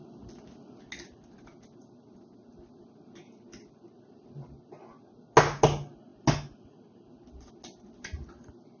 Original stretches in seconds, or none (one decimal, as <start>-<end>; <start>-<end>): 0.0-8.8

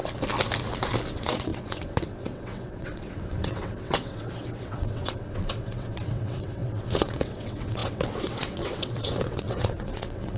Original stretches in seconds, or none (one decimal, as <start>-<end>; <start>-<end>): 0.0-1.1

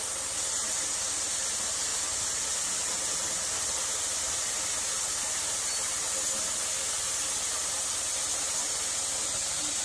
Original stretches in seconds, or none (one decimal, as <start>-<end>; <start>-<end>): 0.0-9.8

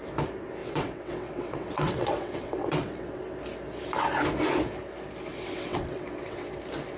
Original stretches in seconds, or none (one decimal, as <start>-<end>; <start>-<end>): 0.0-0.6; 3.2-5.3; 6.5-7.0

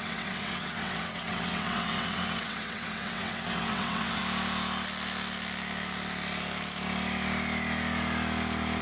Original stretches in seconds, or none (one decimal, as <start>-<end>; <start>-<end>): 4.2-8.8

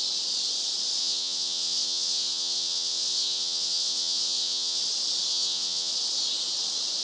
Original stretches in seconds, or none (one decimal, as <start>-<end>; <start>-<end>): 0.0-1.0; 4.8-5.3; 5.9-7.0